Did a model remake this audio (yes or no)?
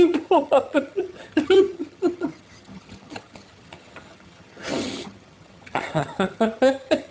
yes